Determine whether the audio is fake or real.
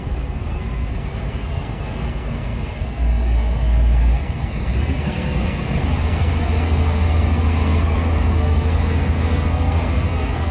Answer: fake